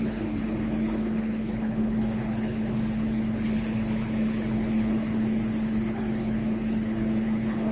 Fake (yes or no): yes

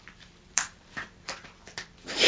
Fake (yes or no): yes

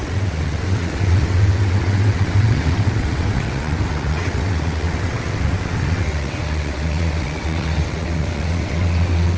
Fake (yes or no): yes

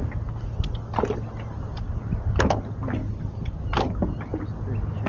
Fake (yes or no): no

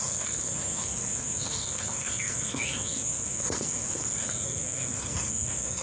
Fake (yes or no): yes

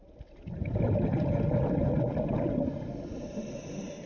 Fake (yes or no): no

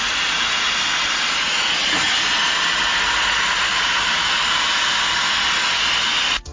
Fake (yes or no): no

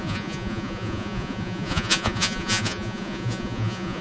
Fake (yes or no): yes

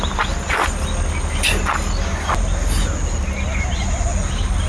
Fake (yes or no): no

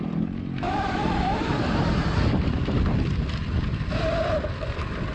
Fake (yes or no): yes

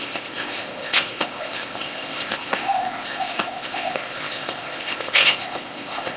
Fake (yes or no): yes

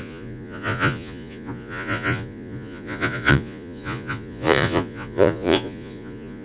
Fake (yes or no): yes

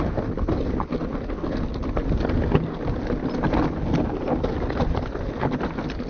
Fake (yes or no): no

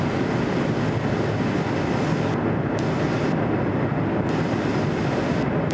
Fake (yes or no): no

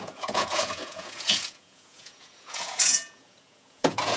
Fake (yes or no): yes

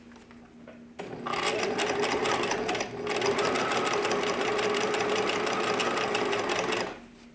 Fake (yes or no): no